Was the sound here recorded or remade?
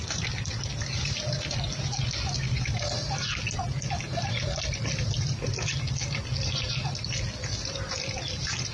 recorded